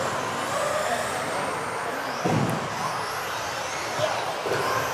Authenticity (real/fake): real